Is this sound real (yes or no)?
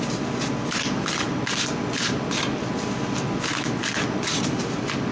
yes